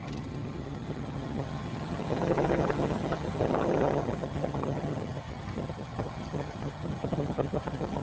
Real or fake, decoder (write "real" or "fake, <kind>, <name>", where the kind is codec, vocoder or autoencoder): fake, vocoder, HiFi-GAN